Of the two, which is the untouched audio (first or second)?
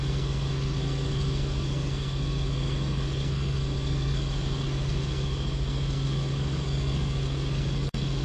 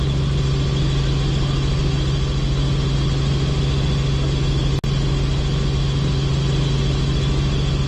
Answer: second